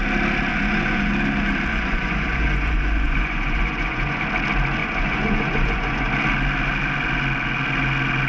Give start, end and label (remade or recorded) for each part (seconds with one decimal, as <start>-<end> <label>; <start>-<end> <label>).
0.0-0.5 recorded; 0.5-1.1 remade; 1.1-1.7 recorded; 1.7-4.2 remade; 4.2-4.8 recorded; 4.8-6.1 remade; 6.1-8.3 recorded